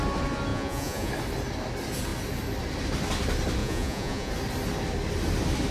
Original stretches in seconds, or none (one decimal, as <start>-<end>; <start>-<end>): 0.0-0.5; 1.1-3.6; 4.3-5.7